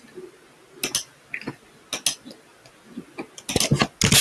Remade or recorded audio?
recorded